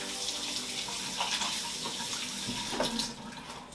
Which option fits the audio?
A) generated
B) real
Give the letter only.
B